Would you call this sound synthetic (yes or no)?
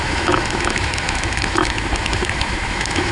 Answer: yes